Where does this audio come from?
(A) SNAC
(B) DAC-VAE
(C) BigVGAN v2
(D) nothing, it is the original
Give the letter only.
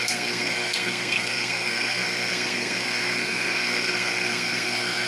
A